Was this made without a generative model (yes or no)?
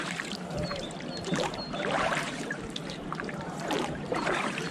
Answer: no